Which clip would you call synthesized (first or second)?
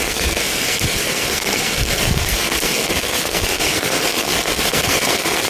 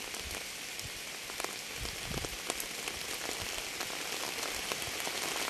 first